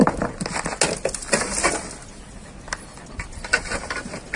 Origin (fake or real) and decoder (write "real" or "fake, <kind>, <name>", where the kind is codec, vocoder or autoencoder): real